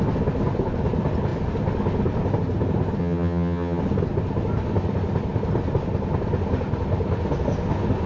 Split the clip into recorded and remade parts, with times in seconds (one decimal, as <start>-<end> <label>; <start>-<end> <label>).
0.0-3.0 recorded; 3.0-3.8 remade; 3.8-8.1 recorded